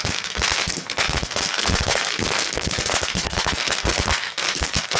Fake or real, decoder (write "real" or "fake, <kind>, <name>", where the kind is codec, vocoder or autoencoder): fake, codec, SNAC